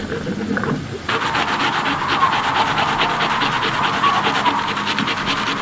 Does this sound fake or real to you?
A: real